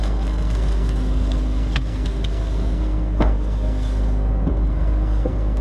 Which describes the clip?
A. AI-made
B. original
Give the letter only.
A